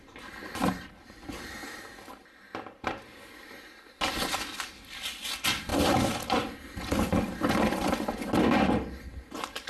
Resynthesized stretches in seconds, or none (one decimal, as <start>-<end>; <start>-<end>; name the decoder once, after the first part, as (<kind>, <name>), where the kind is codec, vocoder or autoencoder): 5.7-7.5 (vocoder, BigVGAN v2)